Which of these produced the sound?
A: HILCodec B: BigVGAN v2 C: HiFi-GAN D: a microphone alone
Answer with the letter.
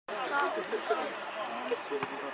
D